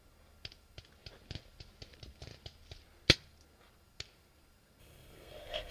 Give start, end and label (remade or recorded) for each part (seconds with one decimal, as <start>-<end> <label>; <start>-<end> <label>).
0.0-4.8 recorded; 4.8-5.7 remade